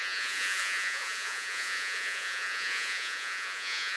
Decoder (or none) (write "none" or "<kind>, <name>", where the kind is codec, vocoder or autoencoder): vocoder, Vocos